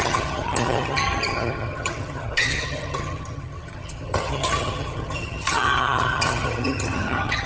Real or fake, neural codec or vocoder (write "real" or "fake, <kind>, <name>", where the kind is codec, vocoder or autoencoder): fake, vocoder, HiFi-GAN